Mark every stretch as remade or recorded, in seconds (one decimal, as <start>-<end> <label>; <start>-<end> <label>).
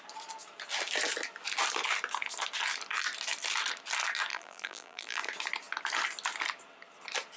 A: 0.0-4.3 recorded; 4.3-5.2 remade; 5.2-7.4 recorded